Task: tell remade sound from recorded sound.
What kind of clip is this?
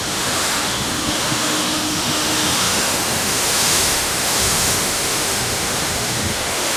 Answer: remade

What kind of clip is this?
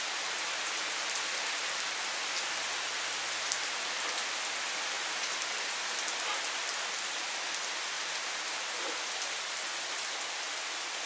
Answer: recorded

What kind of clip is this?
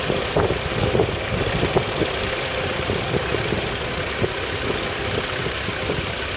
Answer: recorded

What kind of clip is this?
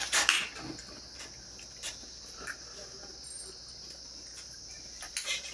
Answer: recorded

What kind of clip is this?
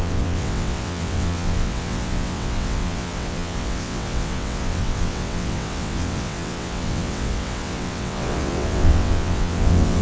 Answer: remade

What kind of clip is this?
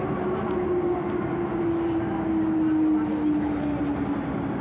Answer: recorded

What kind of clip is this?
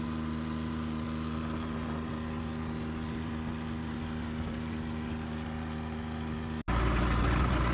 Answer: recorded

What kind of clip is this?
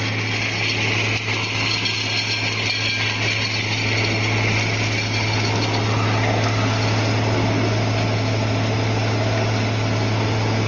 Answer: recorded